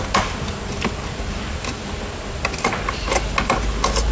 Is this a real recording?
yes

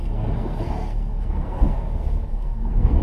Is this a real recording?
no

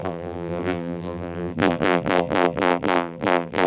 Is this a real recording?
no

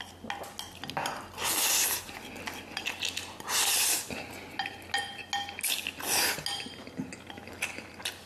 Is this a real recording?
yes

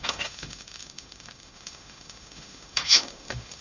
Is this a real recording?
no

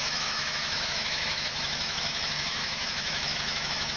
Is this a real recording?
no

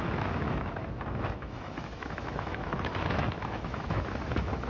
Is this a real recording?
no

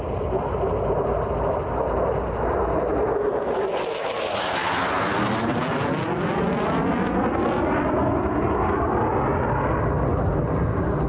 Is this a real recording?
yes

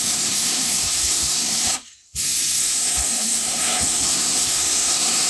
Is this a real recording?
no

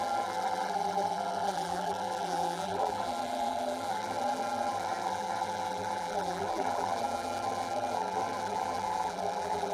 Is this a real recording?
no